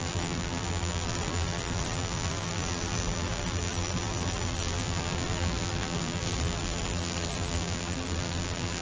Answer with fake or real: fake